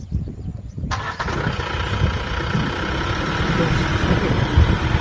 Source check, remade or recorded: recorded